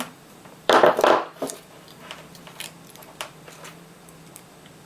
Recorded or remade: remade